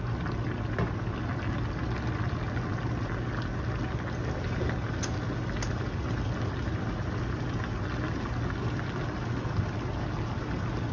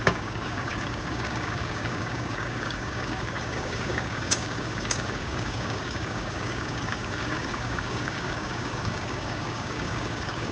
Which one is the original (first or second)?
first